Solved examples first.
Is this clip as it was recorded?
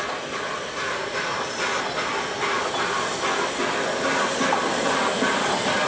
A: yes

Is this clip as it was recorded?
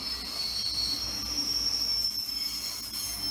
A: yes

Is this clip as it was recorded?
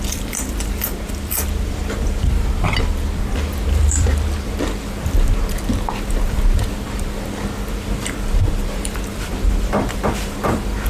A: no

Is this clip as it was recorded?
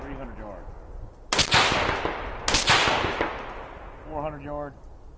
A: yes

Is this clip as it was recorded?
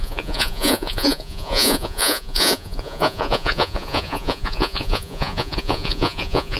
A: no